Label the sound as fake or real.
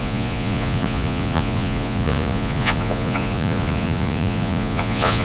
fake